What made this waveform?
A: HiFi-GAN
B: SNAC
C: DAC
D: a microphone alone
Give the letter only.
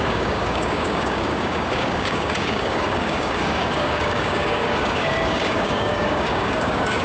C